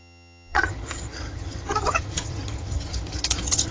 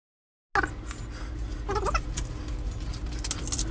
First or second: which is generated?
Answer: first